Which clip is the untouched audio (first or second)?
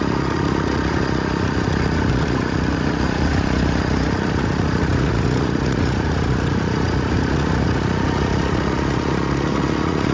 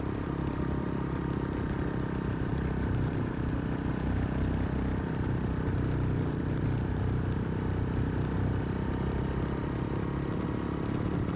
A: second